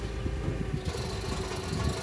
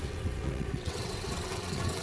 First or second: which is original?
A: first